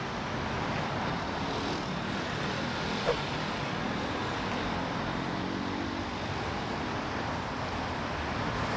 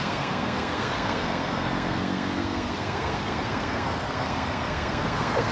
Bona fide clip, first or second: first